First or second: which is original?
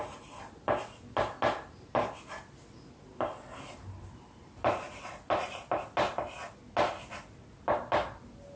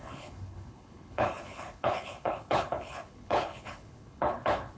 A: first